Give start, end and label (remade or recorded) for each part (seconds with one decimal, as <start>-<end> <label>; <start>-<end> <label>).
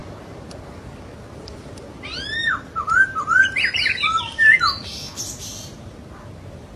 0.0-6.8 remade